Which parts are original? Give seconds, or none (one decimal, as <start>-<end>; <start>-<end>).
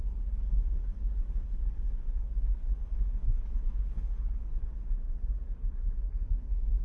none